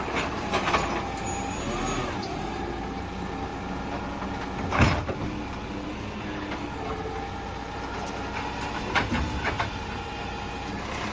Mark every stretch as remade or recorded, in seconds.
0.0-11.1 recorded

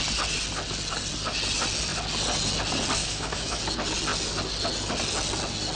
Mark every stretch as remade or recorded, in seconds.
0.0-3.0 recorded; 3.0-3.6 remade; 3.6-5.8 recorded